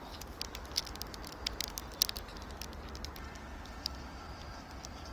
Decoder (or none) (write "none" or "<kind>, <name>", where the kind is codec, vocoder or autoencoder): none